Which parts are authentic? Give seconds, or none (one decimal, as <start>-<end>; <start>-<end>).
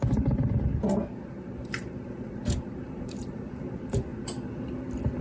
4.1-4.6